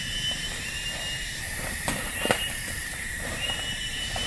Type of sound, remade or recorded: remade